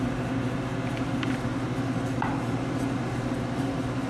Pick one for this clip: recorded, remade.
recorded